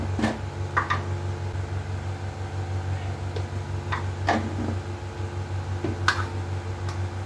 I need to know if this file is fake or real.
real